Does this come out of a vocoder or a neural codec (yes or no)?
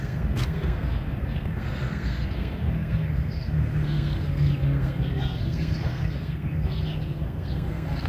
yes